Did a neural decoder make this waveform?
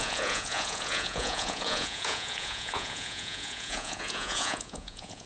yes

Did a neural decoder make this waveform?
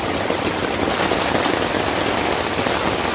no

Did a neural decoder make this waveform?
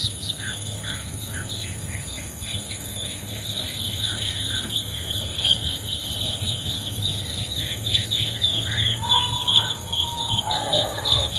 yes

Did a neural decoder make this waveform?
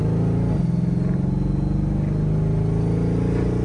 no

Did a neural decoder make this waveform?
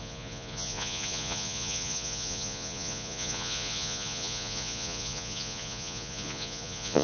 yes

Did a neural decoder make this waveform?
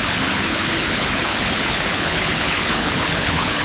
yes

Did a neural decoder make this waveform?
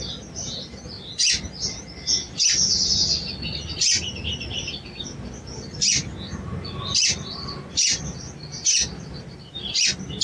no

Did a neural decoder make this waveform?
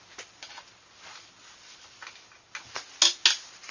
no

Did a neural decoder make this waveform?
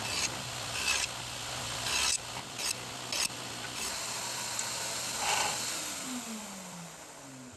no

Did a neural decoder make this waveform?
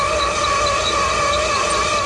yes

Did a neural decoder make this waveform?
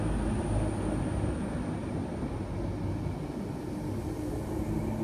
no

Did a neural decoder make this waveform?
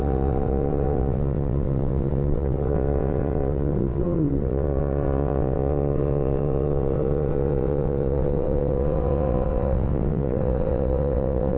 yes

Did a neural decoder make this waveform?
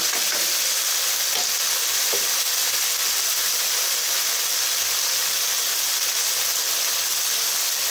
no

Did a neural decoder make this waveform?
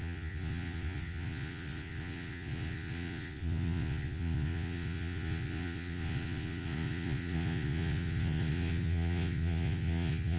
yes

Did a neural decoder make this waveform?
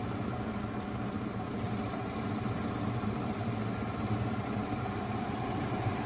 yes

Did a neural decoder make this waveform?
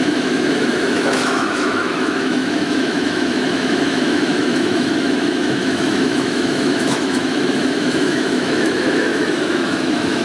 yes